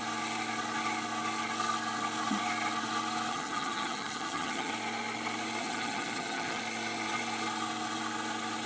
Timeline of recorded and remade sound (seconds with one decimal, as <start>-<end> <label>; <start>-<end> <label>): 0.0-3.3 recorded; 3.3-4.7 remade; 4.7-5.6 recorded; 5.6-6.6 remade; 6.6-8.7 recorded

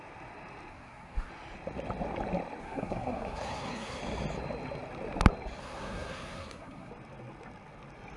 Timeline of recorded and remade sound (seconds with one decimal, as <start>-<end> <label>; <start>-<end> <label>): 0.0-0.7 recorded; 0.7-1.3 remade; 1.3-2.6 recorded; 2.6-4.0 remade; 4.0-5.6 recorded; 5.6-6.9 remade; 6.9-8.2 recorded

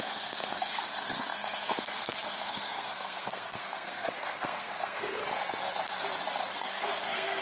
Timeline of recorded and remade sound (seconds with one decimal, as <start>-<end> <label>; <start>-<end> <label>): 0.0-5.2 remade; 5.2-6.6 recorded; 6.6-7.4 remade

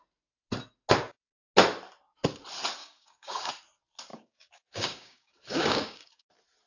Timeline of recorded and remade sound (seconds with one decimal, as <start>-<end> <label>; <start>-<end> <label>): 0.0-2.8 recorded; 2.8-3.5 remade; 3.5-4.1 recorded; 4.1-6.3 remade; 6.3-6.7 recorded

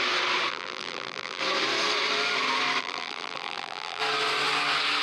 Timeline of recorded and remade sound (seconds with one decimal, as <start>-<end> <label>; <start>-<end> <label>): 0.0-0.5 recorded; 0.5-1.4 remade; 1.4-2.8 recorded; 2.8-4.0 remade; 4.0-5.0 recorded

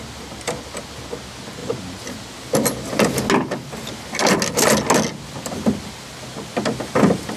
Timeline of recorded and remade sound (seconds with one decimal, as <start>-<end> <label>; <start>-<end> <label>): 0.0-7.4 recorded

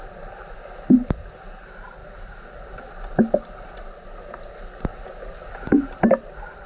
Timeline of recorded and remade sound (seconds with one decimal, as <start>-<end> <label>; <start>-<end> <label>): 0.0-6.7 recorded

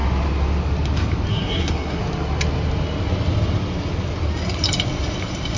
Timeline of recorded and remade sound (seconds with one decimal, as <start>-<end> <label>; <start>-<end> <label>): 0.0-1.3 recorded; 1.3-2.0 remade; 2.0-5.6 recorded